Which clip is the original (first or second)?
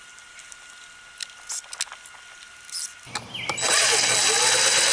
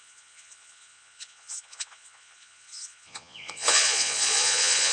first